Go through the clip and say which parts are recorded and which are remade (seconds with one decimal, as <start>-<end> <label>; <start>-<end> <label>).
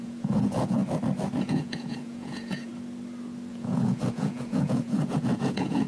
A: 0.0-0.8 remade; 0.8-1.4 recorded; 1.4-2.7 remade; 2.7-3.5 recorded; 3.5-5.9 remade